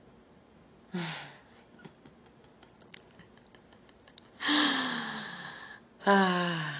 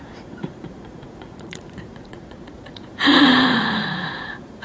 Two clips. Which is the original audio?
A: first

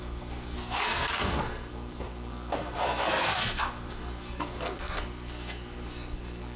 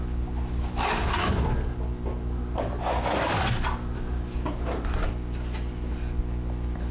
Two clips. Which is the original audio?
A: second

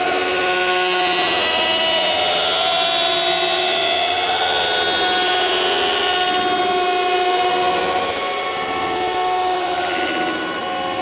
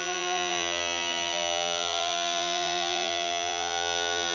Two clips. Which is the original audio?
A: first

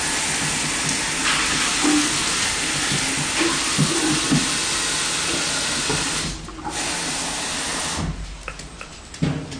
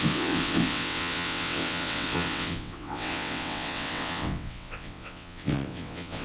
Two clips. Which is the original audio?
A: first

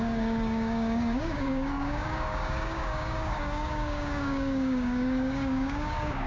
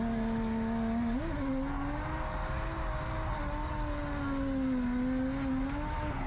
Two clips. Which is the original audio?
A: second